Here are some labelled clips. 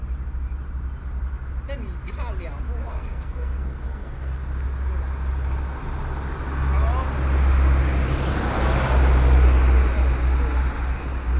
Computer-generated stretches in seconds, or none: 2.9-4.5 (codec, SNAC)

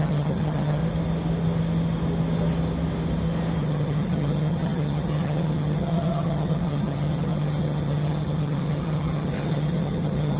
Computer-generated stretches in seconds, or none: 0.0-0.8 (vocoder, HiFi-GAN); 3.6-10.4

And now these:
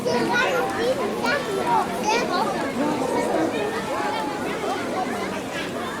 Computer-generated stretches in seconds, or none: 0.0-0.6 (vocoder, BigVGAN v2)

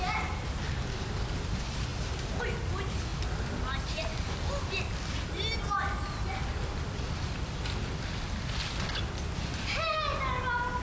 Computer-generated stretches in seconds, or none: none

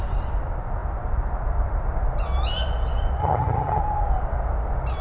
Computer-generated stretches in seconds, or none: 3.2-3.8 (vocoder, HiFi-GAN)